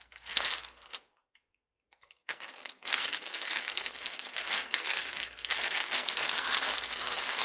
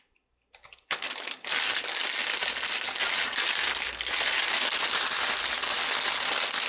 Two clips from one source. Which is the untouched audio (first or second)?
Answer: second